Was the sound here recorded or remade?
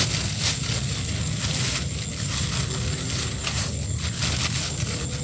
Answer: recorded